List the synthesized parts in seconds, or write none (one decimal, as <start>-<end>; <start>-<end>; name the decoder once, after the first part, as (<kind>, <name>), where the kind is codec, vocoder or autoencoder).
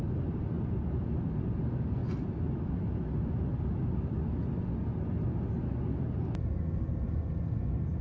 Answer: none